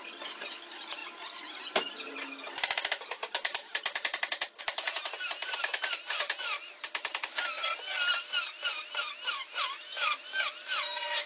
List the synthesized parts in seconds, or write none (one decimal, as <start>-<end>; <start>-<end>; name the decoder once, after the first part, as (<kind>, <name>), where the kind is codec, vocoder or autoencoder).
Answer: 0.0-7.1 (vocoder, BigVGAN v2); 8.5-11.3